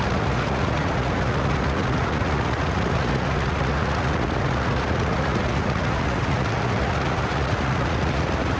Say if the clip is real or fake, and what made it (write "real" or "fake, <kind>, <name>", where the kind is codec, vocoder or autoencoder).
fake, vocoder, Vocos